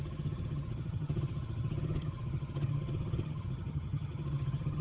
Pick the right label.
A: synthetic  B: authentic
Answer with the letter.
A